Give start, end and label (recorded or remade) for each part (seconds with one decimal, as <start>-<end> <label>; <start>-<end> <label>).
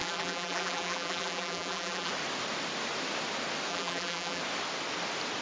0.0-2.1 remade; 2.1-3.7 recorded; 3.7-4.4 remade; 4.4-5.4 recorded